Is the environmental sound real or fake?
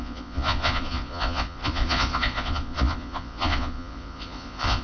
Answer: fake